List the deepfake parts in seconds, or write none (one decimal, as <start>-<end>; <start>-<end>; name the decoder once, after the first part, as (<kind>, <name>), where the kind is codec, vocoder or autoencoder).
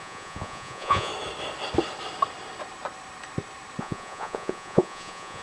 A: 0.0-1.1 (vocoder, Vocos); 3.8-5.4